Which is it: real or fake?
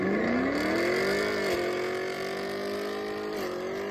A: real